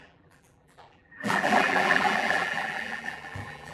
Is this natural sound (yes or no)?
no